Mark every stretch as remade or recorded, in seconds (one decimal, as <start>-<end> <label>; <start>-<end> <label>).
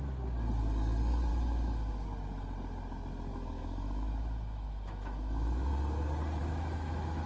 0.0-1.3 recorded; 1.3-1.9 remade; 1.9-3.3 recorded; 3.3-5.7 remade; 5.7-6.4 recorded; 6.4-7.3 remade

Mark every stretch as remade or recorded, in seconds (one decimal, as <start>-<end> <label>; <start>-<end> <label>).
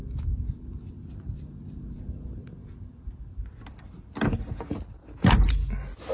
0.0-6.1 recorded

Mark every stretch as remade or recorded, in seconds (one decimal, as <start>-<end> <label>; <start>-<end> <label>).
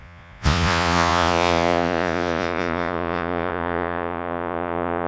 0.0-5.1 remade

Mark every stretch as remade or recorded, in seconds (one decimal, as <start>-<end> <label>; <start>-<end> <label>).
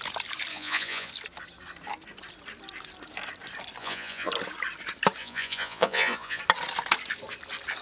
0.0-0.5 recorded; 0.5-1.1 remade; 1.1-3.8 recorded; 3.8-4.3 remade; 4.3-5.2 recorded; 5.2-6.4 remade; 6.4-7.8 recorded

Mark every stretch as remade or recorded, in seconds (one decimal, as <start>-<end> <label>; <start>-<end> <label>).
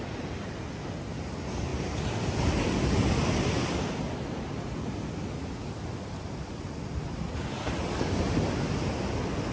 0.0-9.5 recorded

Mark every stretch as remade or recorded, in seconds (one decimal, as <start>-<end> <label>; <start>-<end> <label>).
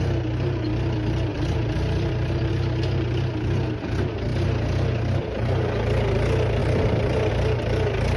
0.0-1.3 recorded; 1.3-2.5 remade; 2.5-6.6 recorded; 6.6-7.3 remade; 7.3-8.2 recorded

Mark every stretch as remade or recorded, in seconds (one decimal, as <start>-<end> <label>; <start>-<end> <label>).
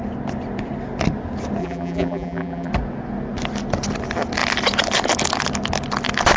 0.0-1.6 recorded; 1.6-2.7 remade; 2.7-6.4 recorded